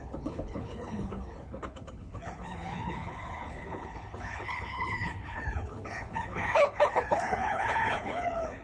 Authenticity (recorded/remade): remade